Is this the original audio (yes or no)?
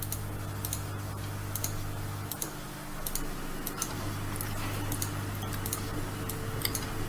yes